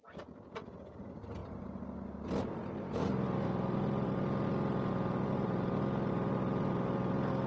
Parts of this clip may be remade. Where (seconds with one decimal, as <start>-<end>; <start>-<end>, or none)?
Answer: none